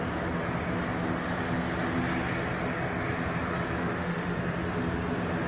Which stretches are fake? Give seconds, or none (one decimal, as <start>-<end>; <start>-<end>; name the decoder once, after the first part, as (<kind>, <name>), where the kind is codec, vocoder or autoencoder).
3.8-4.4 (autoencoder, DAC-VAE)